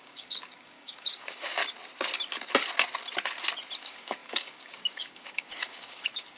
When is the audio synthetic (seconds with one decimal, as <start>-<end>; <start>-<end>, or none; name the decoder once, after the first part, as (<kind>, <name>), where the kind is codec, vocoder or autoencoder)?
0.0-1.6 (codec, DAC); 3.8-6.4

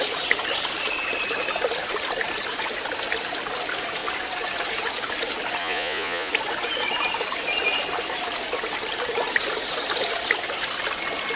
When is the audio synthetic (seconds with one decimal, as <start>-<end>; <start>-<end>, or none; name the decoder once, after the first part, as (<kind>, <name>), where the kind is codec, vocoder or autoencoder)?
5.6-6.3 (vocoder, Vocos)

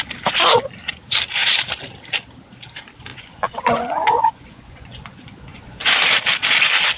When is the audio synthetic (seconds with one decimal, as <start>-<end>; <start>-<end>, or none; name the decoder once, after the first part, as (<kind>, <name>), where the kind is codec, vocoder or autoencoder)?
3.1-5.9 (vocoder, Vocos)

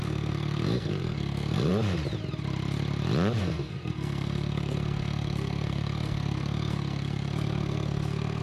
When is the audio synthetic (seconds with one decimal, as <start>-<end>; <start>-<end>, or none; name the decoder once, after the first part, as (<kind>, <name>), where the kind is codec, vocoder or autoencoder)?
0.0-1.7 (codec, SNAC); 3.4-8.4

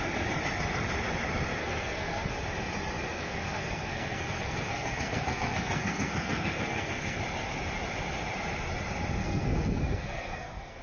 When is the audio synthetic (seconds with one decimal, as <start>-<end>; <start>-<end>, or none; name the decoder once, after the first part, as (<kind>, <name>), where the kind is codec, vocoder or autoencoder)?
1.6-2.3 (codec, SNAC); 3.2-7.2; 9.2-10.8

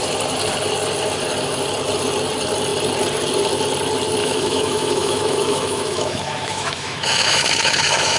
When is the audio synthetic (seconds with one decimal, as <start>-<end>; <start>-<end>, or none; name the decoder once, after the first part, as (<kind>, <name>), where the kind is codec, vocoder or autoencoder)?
4.2-8.2 (autoencoder, DAC-VAE)

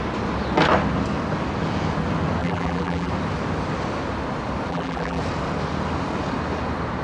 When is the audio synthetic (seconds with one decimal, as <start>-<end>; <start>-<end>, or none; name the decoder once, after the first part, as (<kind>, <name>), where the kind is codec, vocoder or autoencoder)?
2.4-3.1 (vocoder, BigVGAN v2); 4.7-5.2

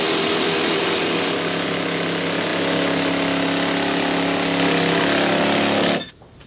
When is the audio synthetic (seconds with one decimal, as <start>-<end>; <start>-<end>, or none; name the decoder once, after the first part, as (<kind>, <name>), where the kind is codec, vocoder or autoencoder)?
none